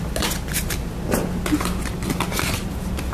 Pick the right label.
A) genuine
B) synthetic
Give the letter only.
A